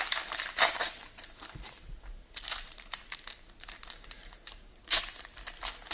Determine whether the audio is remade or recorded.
remade